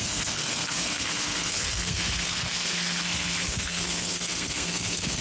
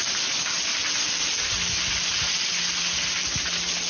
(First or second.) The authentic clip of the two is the second